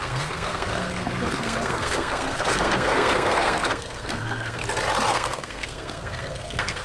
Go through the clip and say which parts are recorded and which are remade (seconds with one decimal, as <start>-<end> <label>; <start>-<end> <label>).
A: 0.0-4.6 remade; 4.6-5.1 recorded; 5.1-6.8 remade